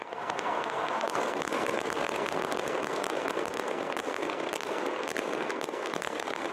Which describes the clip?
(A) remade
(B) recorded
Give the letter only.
A